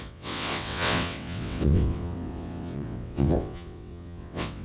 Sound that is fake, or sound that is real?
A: fake